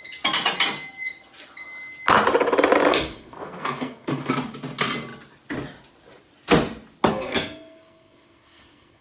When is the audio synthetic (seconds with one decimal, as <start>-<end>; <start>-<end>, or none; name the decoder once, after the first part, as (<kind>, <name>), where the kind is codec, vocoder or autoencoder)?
2.9-4.3 (codec, SNAC); 7.1-9.0